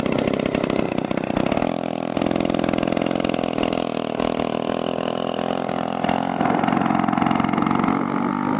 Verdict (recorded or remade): recorded